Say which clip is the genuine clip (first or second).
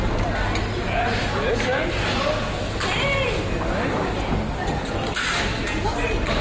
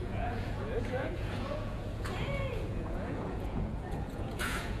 first